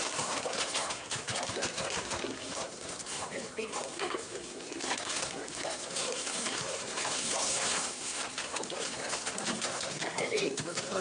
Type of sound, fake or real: fake